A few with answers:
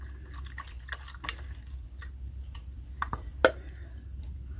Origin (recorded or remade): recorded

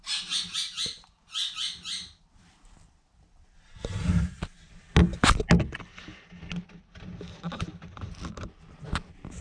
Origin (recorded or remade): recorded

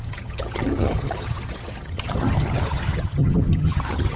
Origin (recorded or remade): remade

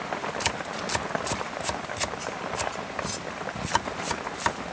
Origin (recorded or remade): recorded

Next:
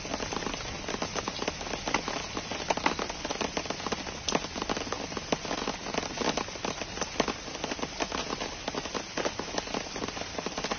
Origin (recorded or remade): recorded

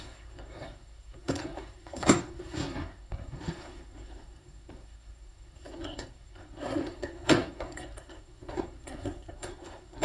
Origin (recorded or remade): remade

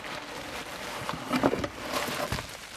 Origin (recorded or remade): recorded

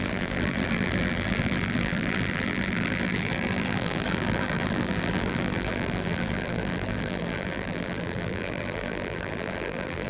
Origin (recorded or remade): remade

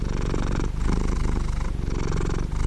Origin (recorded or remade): recorded